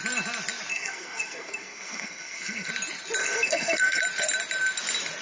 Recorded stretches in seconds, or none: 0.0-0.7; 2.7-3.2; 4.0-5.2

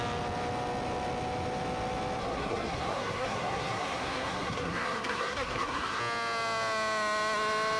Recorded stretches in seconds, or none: 0.0-2.2; 6.0-7.8

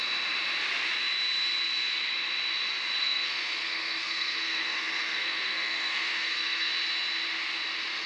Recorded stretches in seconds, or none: 0.0-3.0; 6.7-8.1

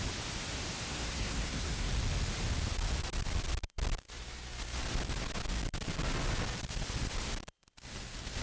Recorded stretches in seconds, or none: 0.0-0.9; 1.9-8.4

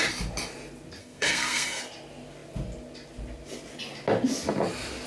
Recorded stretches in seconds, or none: 0.0-1.0; 1.8-5.1

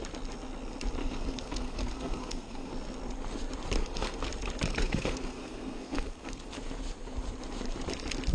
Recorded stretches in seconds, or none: 0.0-1.0; 2.7-3.8; 4.3-4.7; 6.5-8.3

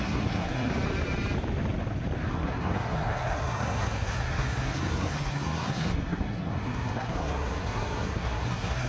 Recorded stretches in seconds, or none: 0.7-2.3

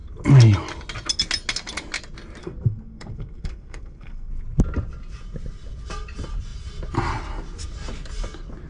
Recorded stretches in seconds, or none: 0.0-2.4; 4.3-8.7